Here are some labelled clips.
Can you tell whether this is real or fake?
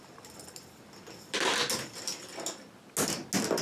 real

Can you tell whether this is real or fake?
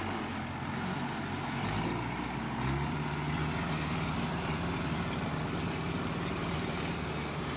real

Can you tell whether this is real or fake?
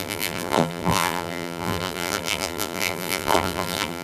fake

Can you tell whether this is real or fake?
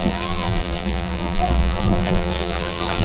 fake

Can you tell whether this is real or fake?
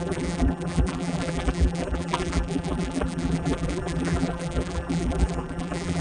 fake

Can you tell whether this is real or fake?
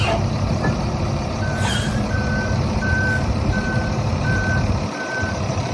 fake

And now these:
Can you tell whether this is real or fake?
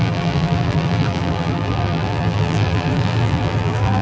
fake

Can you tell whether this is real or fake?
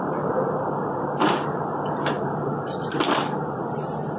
fake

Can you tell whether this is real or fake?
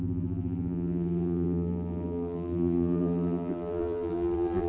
fake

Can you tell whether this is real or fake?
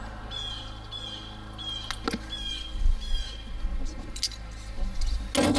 real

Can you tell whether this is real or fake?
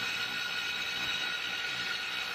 real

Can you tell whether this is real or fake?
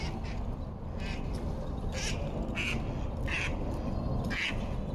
real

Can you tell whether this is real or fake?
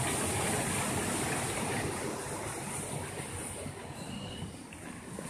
real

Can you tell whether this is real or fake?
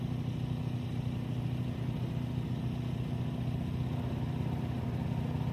real